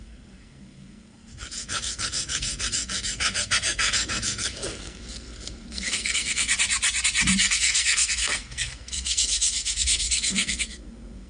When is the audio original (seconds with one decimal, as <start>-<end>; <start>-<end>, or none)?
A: 6.5-7.4